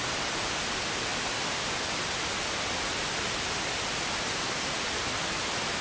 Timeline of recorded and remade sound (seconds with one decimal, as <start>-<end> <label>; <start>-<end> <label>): 0.0-1.1 remade; 1.1-3.9 recorded; 3.9-5.8 remade